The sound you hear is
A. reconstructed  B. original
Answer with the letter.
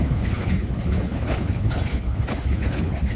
A